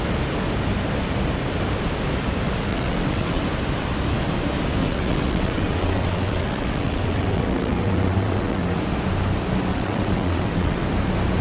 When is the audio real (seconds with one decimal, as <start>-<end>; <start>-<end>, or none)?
0.0-2.7; 3.4-4.8; 8.8-9.7; 10.8-11.4